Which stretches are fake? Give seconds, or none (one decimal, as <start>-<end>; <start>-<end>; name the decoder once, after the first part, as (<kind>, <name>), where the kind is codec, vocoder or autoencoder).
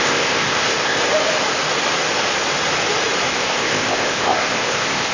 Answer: 0.0-1.0 (codec, ZipCodec); 3.3-5.1